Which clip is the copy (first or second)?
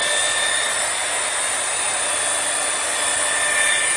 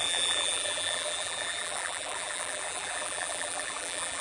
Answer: second